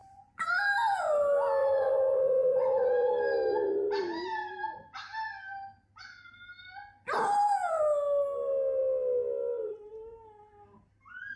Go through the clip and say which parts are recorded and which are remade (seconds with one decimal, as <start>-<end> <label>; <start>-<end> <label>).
0.0-0.5 remade; 0.5-1.6 recorded; 1.6-3.1 remade; 3.1-11.4 recorded